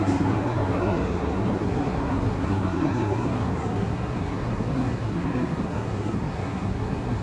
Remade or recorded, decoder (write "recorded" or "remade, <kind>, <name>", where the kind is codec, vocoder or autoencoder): remade, codec, SNAC